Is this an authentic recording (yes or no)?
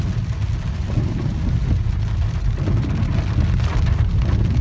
yes